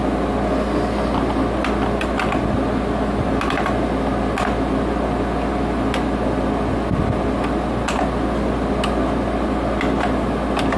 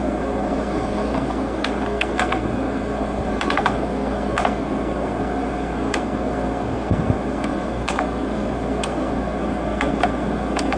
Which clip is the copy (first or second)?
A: second